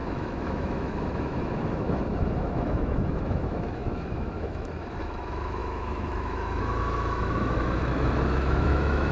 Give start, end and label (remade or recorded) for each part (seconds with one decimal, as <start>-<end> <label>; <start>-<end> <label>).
0.0-9.1 remade